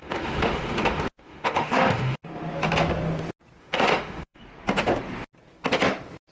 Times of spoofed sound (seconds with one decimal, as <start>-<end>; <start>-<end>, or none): 0.0-2.2; 3.6-4.4